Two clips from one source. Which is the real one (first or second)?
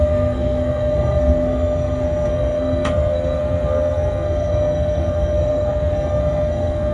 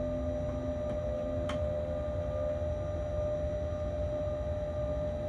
second